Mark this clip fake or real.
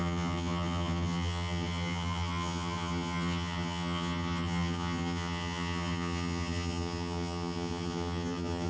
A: fake